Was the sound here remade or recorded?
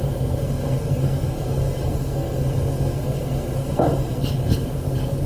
remade